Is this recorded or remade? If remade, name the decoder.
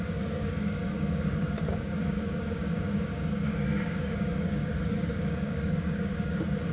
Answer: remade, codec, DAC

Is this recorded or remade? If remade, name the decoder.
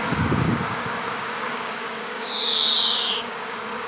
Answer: remade, codec, DAC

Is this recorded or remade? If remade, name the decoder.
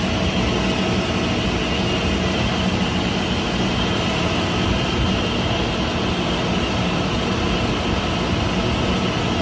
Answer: recorded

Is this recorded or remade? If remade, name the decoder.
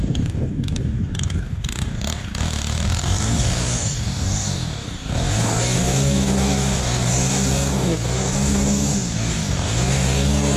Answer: remade, codec, DAC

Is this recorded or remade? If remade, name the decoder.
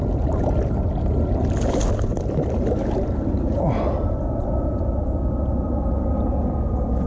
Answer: recorded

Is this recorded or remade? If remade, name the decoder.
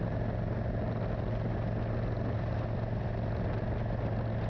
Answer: recorded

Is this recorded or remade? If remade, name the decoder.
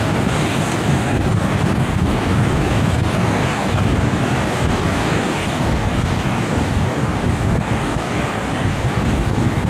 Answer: remade, codec, DAC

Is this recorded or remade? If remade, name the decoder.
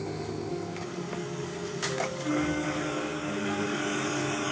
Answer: remade, codec, DAC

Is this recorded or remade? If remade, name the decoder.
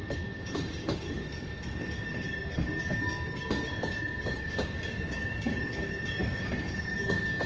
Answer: remade, codec, DAC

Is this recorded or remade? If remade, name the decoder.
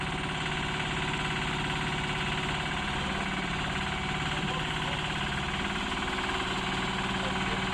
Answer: recorded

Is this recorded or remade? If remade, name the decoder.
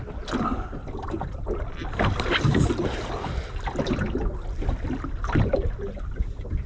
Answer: recorded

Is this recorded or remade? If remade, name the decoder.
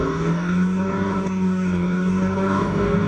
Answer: remade, codec, DAC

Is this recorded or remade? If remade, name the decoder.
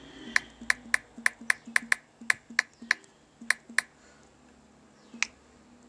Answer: recorded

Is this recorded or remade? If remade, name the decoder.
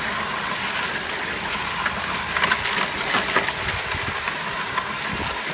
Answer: recorded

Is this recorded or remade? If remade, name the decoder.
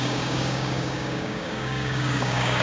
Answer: remade, codec, DAC